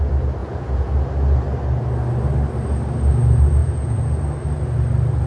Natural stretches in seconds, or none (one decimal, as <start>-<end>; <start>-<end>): 0.0-0.4; 0.9-3.6; 4.2-5.3